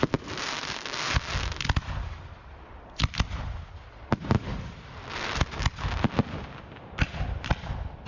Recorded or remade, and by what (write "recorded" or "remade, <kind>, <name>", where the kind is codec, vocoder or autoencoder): recorded